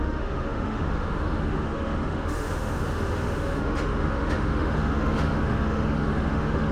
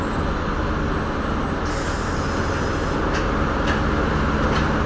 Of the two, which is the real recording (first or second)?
second